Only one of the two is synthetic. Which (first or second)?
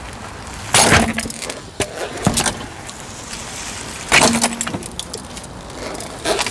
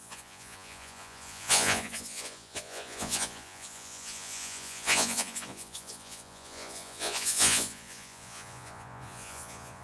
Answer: second